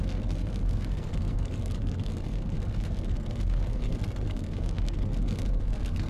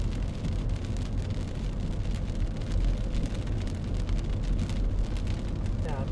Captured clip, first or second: second